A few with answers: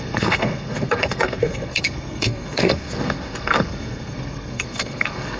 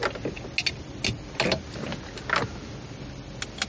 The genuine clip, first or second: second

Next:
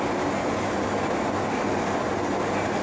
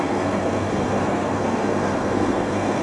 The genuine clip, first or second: first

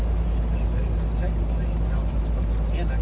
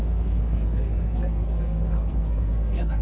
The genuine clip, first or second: first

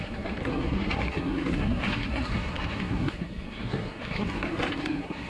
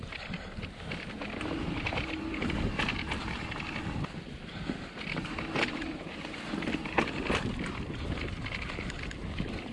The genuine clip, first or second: second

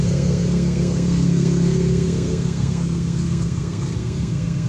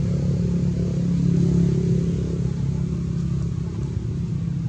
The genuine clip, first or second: second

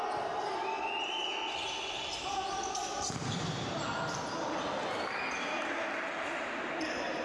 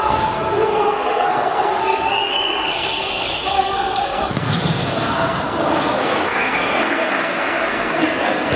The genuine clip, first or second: first